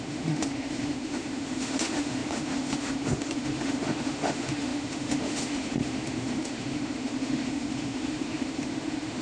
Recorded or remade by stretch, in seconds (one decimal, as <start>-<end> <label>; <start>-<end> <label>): 0.0-9.2 remade